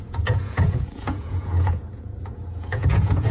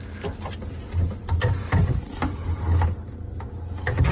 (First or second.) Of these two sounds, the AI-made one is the first